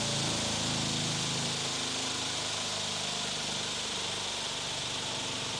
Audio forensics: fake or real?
real